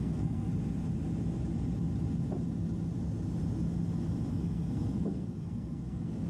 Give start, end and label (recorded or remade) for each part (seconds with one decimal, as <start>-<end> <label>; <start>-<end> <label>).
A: 0.0-0.5 remade; 0.5-4.3 recorded; 4.3-6.3 remade